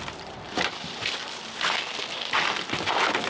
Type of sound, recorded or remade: recorded